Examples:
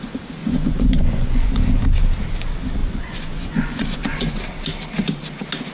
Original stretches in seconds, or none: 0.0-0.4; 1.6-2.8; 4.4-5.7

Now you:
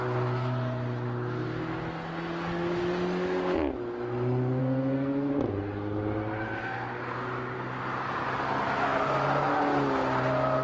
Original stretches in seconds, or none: 0.0-4.6; 5.3-10.6

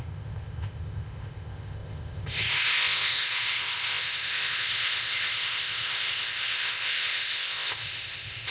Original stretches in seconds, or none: none

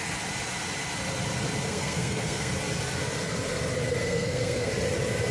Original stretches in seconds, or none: 0.0-1.7; 2.5-4.0; 4.7-5.3